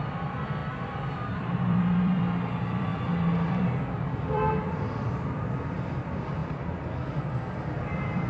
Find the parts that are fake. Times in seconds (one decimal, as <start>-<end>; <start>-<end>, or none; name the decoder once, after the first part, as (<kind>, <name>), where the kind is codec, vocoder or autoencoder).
0.0-0.6 (vocoder, BigVGAN v2); 1.3-6.4; 7.8-8.3